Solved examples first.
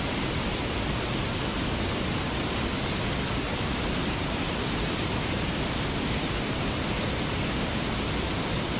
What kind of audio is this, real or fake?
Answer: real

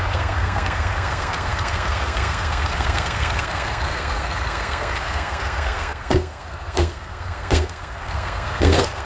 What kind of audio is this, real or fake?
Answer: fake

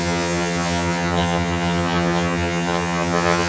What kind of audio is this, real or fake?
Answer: fake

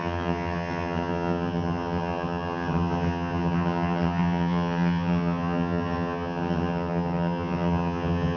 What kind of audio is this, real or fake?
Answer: fake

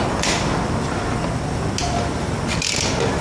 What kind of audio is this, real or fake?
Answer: real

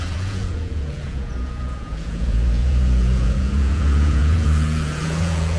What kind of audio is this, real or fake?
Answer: fake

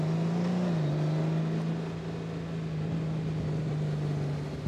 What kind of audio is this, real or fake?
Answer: real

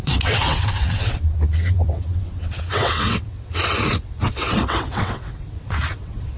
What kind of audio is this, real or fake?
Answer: fake